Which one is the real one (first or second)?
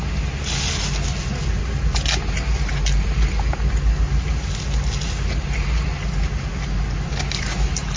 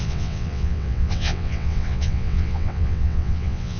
first